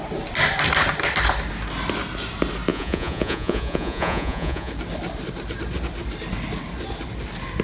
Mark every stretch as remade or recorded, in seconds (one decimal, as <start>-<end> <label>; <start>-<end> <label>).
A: 0.0-2.7 recorded; 2.7-4.7 remade; 4.7-7.6 recorded